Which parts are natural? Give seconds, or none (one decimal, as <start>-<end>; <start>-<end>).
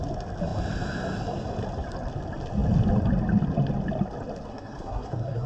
0.0-4.5